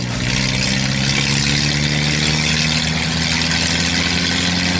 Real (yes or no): yes